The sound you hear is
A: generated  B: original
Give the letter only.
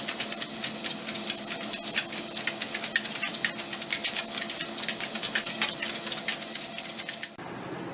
B